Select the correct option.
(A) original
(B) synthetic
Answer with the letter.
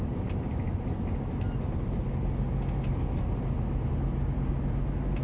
A